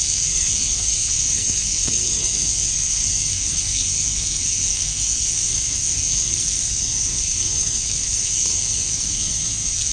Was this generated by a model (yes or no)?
yes